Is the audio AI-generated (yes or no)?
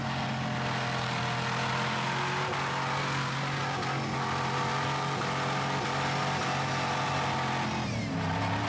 no